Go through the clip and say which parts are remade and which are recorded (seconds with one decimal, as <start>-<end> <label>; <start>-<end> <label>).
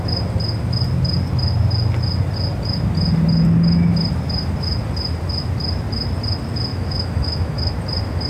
0.0-6.7 recorded; 6.7-7.7 remade; 7.7-8.3 recorded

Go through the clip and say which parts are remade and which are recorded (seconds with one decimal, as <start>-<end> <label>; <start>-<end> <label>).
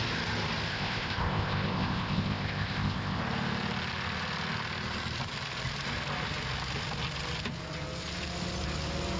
0.0-0.7 recorded; 0.7-3.2 remade; 3.2-9.2 recorded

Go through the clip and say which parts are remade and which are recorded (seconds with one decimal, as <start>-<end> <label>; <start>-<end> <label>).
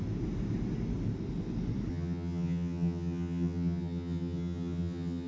0.0-1.9 recorded; 1.9-5.3 remade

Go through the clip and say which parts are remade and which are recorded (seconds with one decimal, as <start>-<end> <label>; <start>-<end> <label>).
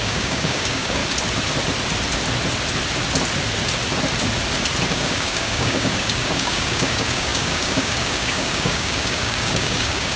0.0-1.0 remade; 1.0-4.9 recorded; 4.9-10.2 remade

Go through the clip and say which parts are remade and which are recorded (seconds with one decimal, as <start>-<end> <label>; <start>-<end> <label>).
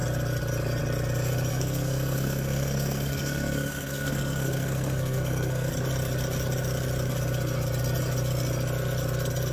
0.0-1.5 recorded; 1.5-5.7 remade; 5.7-9.5 recorded